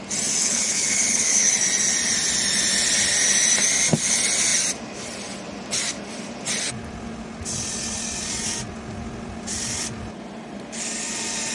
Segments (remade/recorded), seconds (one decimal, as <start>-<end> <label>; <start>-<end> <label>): 0.0-0.4 recorded; 0.4-1.5 remade; 1.5-11.5 recorded